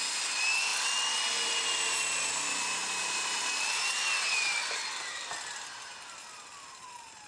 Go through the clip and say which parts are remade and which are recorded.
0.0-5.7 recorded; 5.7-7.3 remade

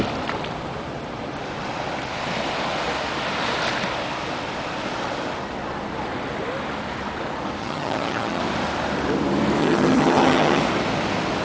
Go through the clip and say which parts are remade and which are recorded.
0.0-7.6 recorded; 7.6-8.4 remade; 8.4-9.6 recorded; 9.6-10.6 remade; 10.6-11.4 recorded

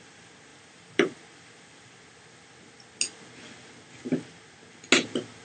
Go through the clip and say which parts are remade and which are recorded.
0.0-0.5 recorded; 0.5-1.9 remade; 1.9-5.4 recorded

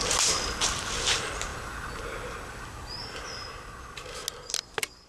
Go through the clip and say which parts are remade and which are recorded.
0.0-5.1 recorded